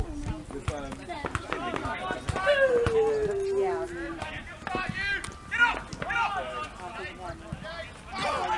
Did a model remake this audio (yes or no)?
no